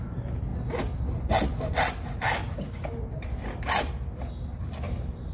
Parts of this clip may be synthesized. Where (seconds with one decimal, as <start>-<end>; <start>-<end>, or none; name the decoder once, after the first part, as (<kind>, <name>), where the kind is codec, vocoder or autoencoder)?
none